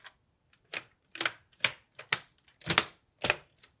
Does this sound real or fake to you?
real